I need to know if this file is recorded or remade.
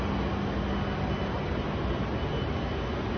recorded